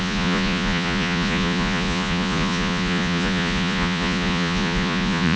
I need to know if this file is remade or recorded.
remade